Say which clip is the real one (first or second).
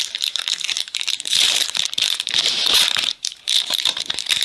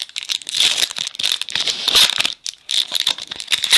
second